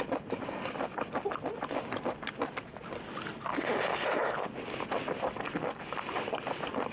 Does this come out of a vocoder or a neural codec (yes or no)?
no